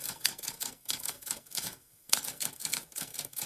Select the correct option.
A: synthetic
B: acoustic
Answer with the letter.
A